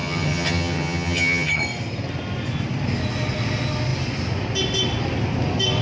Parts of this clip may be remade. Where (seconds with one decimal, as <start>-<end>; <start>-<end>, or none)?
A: 0.0-1.6